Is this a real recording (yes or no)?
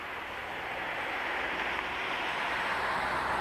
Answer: yes